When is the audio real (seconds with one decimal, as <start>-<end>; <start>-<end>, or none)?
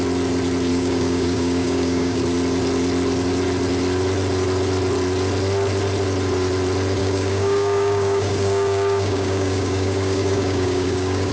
0.0-0.7; 2.2-7.0